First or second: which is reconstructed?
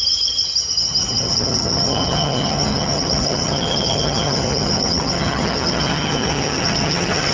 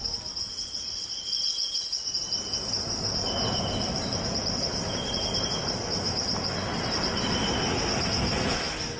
first